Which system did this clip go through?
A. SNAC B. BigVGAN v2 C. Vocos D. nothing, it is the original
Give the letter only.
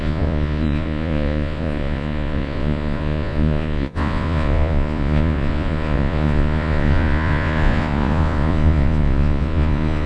C